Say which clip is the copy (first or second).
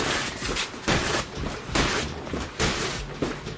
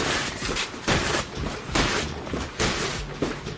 second